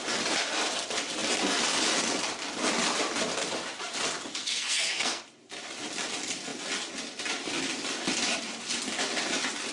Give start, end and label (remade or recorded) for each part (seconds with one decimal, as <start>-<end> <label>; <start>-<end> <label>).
0.0-4.4 recorded; 4.4-5.2 remade; 5.2-9.7 recorded